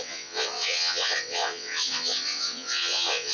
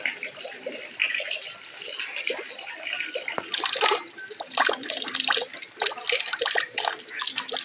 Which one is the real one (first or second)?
second